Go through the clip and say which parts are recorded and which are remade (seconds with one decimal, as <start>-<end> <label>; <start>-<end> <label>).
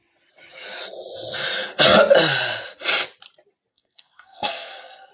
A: 0.0-3.7 recorded; 3.7-5.1 remade